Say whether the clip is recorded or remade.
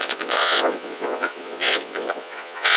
remade